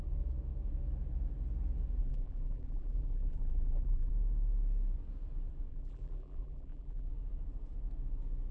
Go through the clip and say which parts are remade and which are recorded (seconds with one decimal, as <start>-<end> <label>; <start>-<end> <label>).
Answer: 0.0-2.0 recorded; 2.0-4.1 remade; 4.1-5.7 recorded; 5.7-7.1 remade; 7.1-8.5 recorded